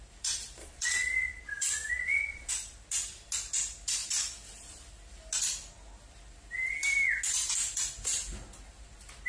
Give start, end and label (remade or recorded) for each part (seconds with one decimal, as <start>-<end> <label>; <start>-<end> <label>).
0.0-0.6 recorded; 0.6-2.5 remade; 2.5-9.3 recorded